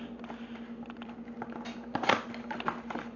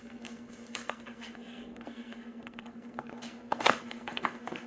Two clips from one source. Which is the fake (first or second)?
second